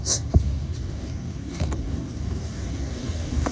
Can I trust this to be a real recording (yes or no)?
no